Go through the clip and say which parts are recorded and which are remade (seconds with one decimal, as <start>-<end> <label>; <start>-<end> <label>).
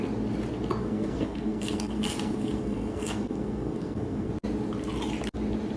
0.0-0.8 recorded; 0.8-4.3 remade; 4.3-5.8 recorded